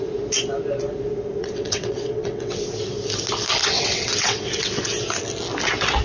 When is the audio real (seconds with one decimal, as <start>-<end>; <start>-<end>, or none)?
0.0-1.4; 2.6-3.6; 4.8-6.0